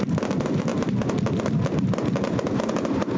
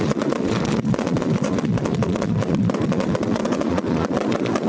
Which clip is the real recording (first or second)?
first